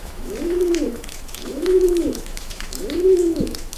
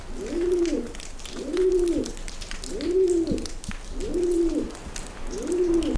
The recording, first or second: second